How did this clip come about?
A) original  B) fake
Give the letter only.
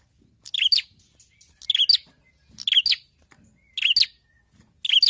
A